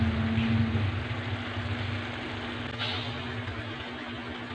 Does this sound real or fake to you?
real